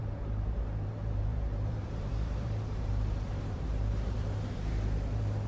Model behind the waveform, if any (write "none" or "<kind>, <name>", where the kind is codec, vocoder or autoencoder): vocoder, BigVGAN v2